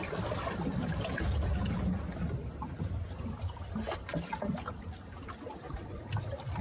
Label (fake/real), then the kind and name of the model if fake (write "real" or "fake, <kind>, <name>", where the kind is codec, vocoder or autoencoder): fake, vocoder, BigVGAN v2